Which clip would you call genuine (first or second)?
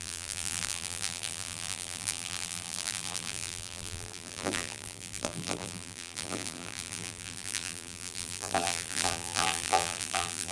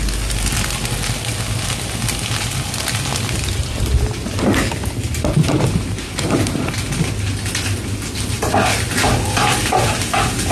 second